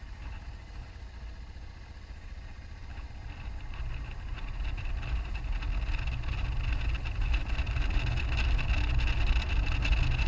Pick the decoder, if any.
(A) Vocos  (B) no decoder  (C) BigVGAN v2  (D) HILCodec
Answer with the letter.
B